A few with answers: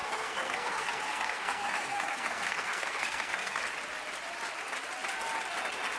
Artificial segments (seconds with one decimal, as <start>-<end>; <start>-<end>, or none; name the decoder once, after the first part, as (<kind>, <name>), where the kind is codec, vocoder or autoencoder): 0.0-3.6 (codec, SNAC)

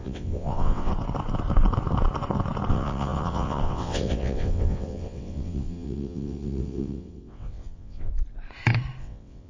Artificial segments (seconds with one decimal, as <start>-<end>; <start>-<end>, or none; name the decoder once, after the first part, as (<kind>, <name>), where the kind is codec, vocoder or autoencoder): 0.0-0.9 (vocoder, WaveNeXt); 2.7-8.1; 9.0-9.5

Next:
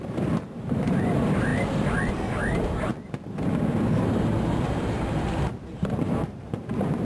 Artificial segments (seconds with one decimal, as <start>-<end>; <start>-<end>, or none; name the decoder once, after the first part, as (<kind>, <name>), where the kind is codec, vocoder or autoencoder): 0.0-1.5 (vocoder, BigVGAN v2); 2.1-2.9; 4.4-7.0